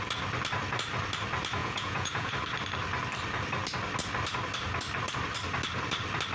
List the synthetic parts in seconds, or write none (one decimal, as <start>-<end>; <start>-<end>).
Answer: 1.6-2.3